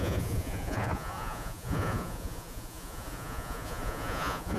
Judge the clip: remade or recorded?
remade